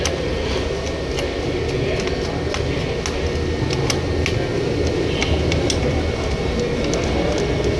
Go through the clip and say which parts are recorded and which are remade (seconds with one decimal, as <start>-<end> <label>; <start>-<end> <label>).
0.0-7.8 recorded